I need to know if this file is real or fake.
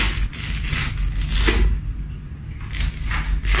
real